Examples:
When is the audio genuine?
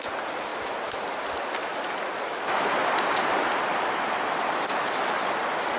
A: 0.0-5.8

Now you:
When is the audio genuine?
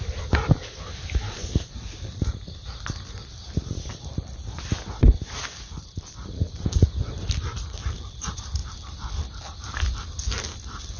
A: 8.6-11.0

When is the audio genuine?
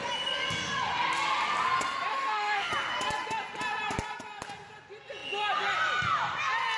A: 0.0-2.1; 2.7-6.8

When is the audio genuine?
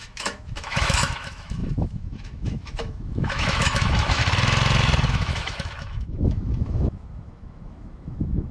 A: 4.2-5.1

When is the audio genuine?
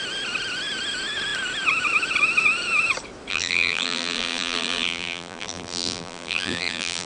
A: 0.0-3.3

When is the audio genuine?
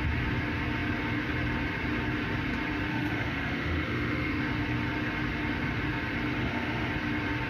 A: 0.0-2.9; 4.4-6.4; 6.9-7.5